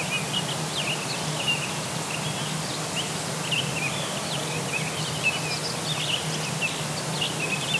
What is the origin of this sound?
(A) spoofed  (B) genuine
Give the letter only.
B